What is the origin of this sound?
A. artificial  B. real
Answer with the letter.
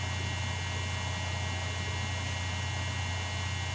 B